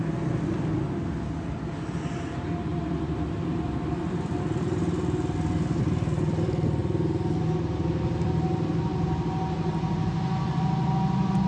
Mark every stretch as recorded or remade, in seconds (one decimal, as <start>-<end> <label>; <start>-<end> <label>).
0.0-2.7 recorded; 2.7-4.3 remade; 4.3-11.5 recorded